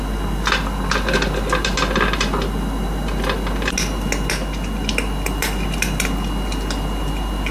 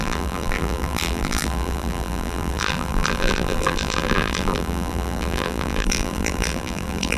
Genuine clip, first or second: first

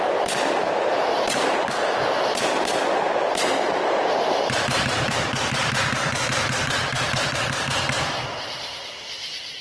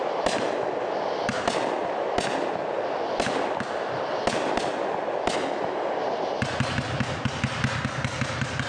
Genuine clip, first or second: second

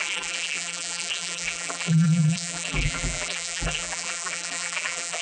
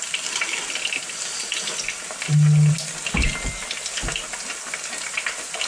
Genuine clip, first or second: second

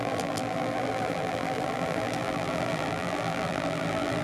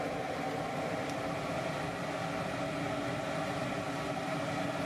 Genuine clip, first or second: second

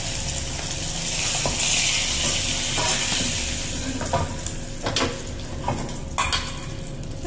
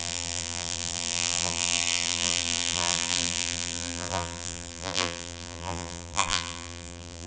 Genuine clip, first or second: first